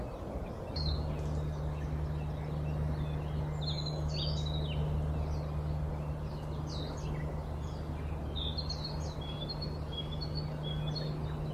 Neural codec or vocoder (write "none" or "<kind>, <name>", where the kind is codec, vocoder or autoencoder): none